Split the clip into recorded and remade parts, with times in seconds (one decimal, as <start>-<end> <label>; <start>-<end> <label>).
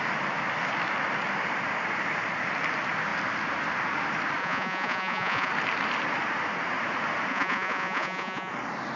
0.0-4.4 recorded; 4.4-5.5 remade; 5.5-7.3 recorded; 7.3-8.5 remade; 8.5-9.0 recorded